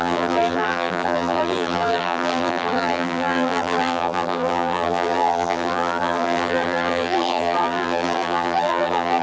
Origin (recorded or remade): remade